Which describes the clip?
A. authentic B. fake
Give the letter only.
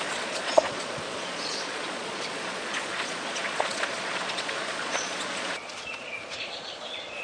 B